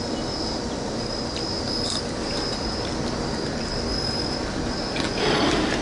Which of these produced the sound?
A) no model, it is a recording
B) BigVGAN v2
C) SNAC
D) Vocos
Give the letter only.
A